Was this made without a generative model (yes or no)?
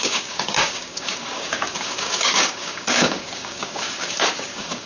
no